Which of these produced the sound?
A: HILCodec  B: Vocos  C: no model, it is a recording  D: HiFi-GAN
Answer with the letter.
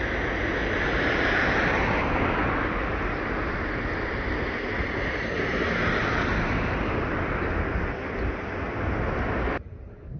C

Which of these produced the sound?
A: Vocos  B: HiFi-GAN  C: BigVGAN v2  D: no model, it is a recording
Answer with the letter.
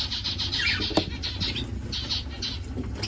D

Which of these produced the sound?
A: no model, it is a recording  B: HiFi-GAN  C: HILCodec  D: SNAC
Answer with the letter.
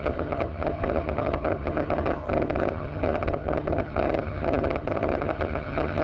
B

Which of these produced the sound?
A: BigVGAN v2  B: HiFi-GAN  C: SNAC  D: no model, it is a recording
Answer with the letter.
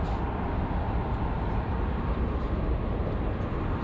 D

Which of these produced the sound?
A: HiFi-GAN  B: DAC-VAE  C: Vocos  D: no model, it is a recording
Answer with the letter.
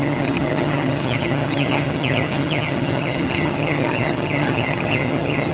A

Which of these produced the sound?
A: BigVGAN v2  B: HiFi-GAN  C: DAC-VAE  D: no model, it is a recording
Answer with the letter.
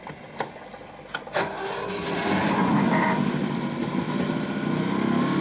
D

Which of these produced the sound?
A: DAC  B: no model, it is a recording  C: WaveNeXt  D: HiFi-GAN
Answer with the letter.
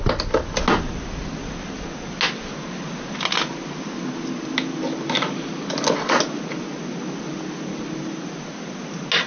B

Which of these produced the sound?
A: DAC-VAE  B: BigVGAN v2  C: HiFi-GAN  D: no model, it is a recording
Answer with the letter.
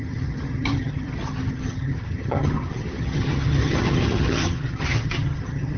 C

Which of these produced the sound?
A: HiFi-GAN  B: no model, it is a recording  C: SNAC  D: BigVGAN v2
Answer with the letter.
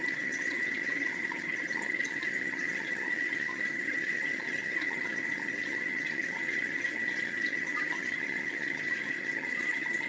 A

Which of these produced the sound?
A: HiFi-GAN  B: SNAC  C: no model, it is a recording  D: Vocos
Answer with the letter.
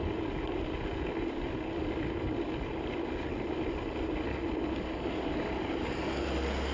C